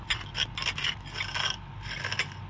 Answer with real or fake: real